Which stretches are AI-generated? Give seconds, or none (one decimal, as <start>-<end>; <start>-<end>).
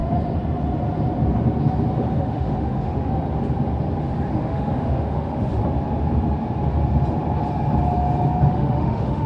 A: 2.2-3.1; 4.3-5.6; 8.5-9.3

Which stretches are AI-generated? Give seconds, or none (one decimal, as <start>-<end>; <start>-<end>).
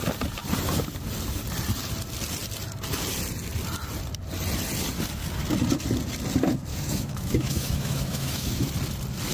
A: 6.7-8.7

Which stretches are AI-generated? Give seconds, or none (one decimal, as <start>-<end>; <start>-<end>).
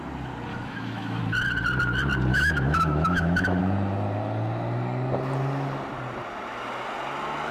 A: 0.5-1.2; 2.3-3.6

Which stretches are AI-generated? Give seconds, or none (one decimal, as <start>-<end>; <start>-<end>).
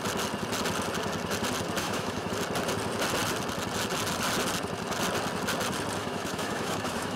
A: 1.8-2.3; 6.0-7.2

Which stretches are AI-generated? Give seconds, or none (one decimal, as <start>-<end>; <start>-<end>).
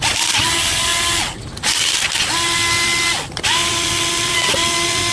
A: none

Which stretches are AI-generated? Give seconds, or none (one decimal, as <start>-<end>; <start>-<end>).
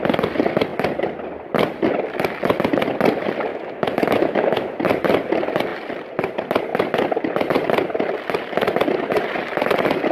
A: 3.5-4.8